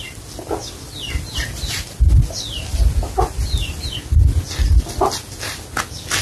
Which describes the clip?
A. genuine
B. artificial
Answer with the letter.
A